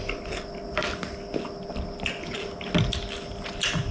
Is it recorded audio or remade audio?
recorded